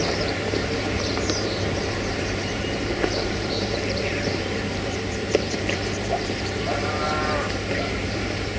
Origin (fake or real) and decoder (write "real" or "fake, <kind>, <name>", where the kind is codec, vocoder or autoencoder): fake, vocoder, BigVGAN v2